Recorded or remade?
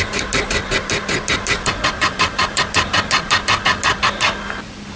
recorded